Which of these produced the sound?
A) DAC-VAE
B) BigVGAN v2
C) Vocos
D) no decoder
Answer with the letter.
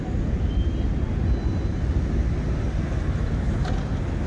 D